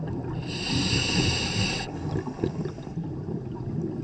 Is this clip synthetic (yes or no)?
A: no